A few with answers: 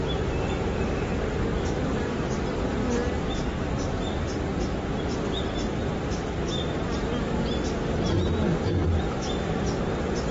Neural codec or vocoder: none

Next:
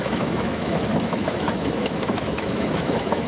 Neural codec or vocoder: autoencoder, DAC-VAE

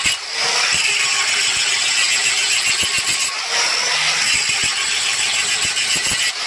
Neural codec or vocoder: none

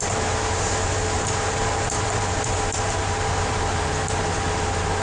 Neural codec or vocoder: vocoder, BigVGAN v2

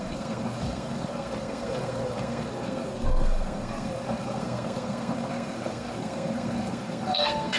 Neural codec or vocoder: codec, SNAC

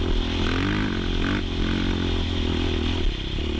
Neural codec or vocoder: none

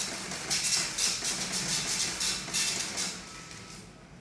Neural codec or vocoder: none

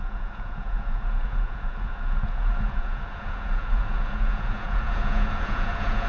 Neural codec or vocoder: vocoder, Vocos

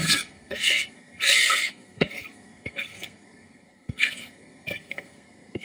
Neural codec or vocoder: codec, SNAC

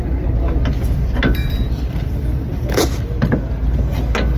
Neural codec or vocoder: none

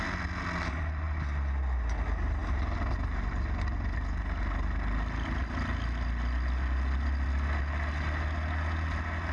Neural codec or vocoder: none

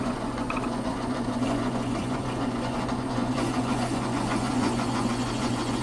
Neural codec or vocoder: vocoder, Vocos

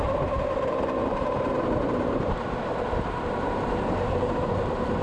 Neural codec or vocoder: vocoder, BigVGAN v2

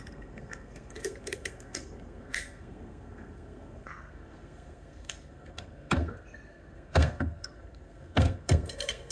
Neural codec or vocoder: codec, SNAC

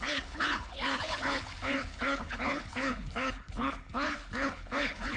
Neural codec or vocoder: codec, HILCodec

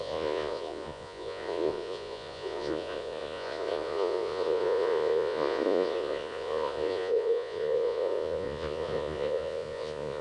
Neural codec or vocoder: vocoder, Vocos